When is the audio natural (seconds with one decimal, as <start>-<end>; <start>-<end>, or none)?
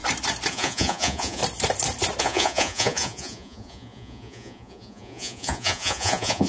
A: 0.0-0.5; 1.4-2.2